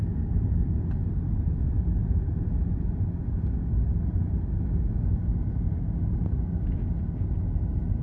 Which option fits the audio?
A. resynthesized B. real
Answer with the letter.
B